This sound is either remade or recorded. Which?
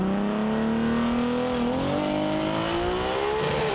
recorded